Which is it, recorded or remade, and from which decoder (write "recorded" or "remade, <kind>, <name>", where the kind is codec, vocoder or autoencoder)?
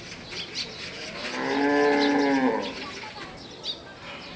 recorded